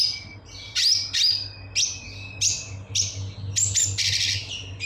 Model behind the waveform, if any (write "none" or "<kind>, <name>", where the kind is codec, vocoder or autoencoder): none